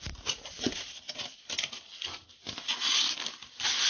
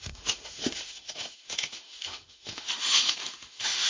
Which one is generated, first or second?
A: second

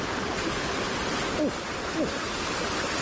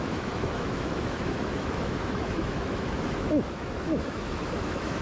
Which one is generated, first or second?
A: second